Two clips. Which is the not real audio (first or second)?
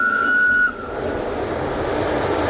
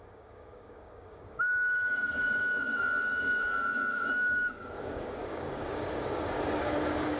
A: second